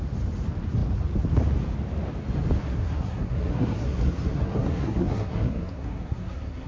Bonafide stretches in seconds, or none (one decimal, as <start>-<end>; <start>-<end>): 0.0-2.6